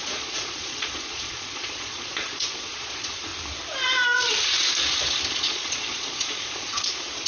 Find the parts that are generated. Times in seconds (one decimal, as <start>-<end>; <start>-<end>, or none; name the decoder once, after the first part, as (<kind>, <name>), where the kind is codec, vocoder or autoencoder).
0.0-3.3 (vocoder, Vocos); 5.3-7.3